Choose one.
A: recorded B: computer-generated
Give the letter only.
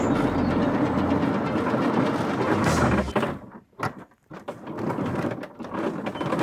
A